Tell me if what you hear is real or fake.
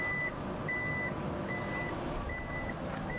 real